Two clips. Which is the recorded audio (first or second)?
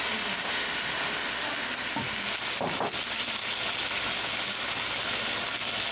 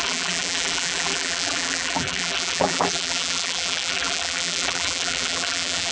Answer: first